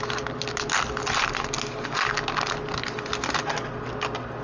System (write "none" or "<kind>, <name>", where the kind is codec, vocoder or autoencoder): none